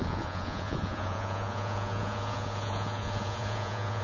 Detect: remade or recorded remade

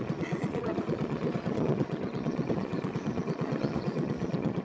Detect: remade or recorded remade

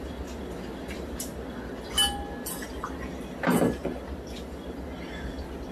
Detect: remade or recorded recorded